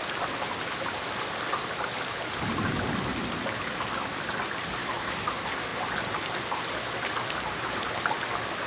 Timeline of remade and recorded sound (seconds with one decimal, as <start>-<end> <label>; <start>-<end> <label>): 0.0-4.8 recorded; 4.8-5.3 remade; 5.3-8.7 recorded